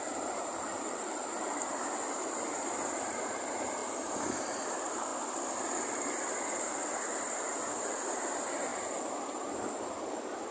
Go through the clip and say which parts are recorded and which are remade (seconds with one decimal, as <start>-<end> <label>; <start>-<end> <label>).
0.0-3.8 remade; 3.8-4.4 recorded; 4.4-5.1 remade; 5.1-5.8 recorded; 5.8-8.7 remade; 8.7-9.3 recorded; 9.3-10.5 remade